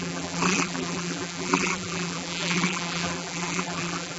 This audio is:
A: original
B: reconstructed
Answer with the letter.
B